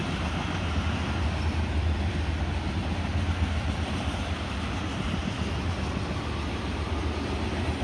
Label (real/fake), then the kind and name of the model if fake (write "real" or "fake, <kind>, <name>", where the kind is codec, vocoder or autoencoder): real